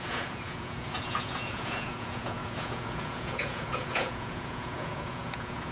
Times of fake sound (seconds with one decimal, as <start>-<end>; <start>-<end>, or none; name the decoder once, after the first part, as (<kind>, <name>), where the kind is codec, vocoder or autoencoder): 0.0-5.7 (vocoder, Vocos)